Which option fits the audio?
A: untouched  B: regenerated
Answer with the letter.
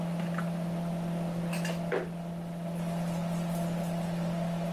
A